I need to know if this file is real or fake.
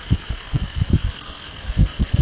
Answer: fake